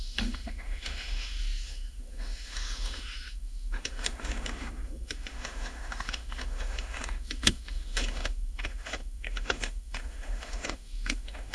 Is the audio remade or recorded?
remade